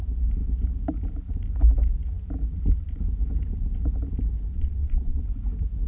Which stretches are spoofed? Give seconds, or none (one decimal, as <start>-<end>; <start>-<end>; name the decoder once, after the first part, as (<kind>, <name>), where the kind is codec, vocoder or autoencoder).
4.5-5.2 (vocoder, WaveNeXt)